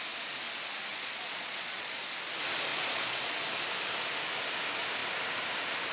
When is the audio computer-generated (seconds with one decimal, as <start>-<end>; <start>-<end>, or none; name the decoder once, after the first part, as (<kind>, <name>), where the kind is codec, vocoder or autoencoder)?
0.9-2.0 (vocoder, Vocos); 2.7-3.2